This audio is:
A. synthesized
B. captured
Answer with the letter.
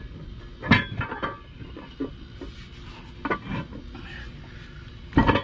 B